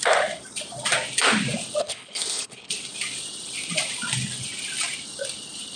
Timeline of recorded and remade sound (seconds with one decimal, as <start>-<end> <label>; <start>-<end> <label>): 0.0-1.8 recorded; 1.8-2.7 remade; 2.7-5.8 recorded